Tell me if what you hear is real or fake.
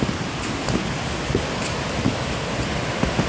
real